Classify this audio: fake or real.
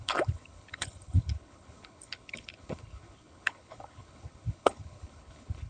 fake